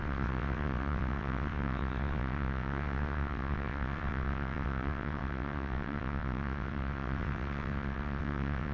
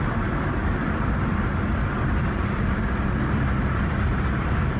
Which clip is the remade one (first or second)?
first